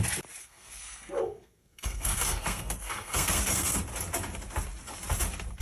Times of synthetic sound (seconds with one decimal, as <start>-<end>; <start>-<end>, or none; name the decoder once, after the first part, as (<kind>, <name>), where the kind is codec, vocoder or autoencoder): 0.4-3.8 (codec, SNAC)